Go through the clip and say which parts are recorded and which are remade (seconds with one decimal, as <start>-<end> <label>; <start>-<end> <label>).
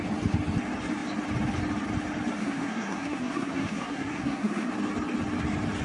0.0-2.4 recorded; 2.4-4.7 remade; 4.7-5.8 recorded